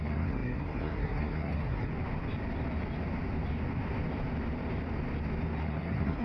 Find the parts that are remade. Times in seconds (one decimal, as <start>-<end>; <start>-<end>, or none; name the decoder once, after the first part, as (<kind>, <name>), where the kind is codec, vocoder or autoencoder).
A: 0.0-1.9 (codec, SNAC); 5.6-6.2